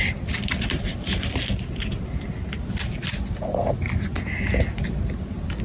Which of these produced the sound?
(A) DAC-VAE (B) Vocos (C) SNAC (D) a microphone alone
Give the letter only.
D